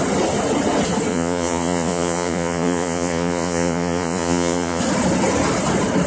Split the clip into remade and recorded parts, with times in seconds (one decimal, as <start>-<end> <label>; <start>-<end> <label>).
0.0-1.1 recorded; 1.1-4.8 remade; 4.8-6.1 recorded